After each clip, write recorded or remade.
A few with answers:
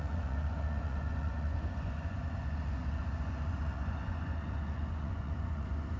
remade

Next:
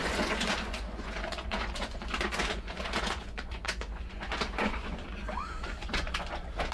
remade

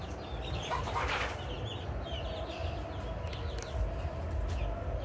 recorded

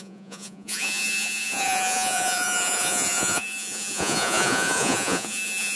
remade